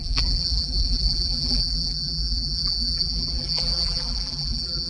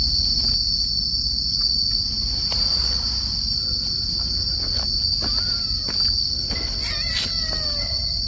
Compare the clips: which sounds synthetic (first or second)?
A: first